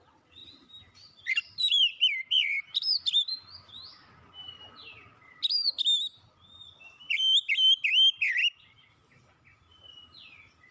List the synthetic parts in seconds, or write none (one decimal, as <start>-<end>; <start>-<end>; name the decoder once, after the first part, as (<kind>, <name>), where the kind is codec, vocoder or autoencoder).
0.4-3.7 (vocoder, BigVGAN v2); 4.4-5.7; 8.4-10.7